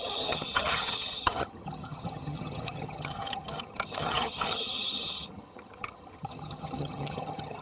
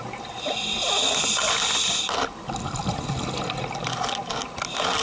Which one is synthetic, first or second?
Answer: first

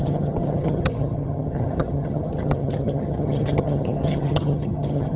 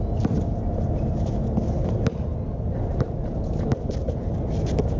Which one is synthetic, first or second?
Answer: first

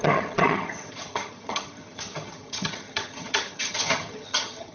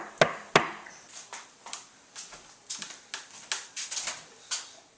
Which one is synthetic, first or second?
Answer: first